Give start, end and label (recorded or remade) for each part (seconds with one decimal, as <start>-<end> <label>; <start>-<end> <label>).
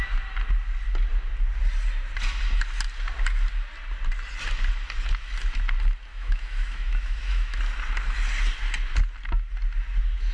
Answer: 0.0-6.1 recorded; 6.1-7.6 remade; 7.6-10.3 recorded